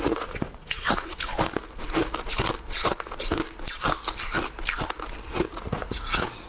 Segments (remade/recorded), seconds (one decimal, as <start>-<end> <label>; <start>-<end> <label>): 0.0-1.3 remade; 1.3-5.2 recorded; 5.2-6.5 remade